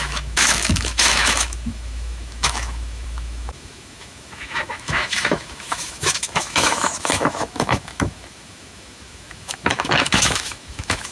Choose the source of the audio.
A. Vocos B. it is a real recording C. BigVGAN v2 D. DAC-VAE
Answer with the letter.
D